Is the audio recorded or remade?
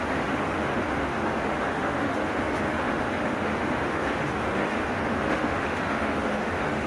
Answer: remade